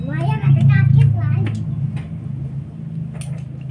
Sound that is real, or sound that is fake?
real